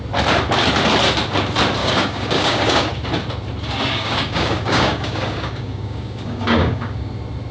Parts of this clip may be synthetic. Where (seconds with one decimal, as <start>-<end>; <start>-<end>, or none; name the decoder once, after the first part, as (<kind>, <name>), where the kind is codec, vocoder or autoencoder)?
1.8-2.9 (codec, DAC); 3.9-7.1